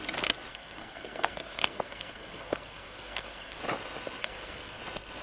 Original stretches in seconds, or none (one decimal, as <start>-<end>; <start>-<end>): 0.0-0.5; 3.6-4.2; 4.8-5.2